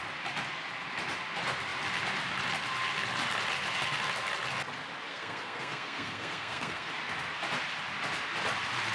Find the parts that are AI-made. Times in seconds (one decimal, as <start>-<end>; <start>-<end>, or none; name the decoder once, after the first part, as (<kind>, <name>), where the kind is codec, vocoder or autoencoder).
5.1-6.9 (codec, SNAC)